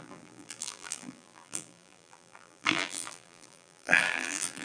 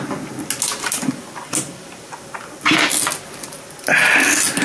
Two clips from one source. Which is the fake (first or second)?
first